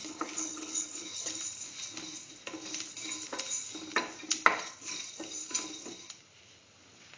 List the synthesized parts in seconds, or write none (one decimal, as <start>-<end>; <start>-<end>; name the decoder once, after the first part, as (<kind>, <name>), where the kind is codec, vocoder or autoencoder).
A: 0.0-1.3 (codec, HILCodec)